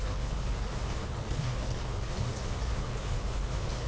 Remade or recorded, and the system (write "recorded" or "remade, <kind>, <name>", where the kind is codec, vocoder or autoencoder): remade, codec, HILCodec